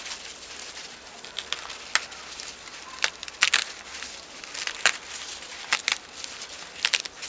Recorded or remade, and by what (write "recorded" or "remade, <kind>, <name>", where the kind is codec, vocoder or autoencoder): recorded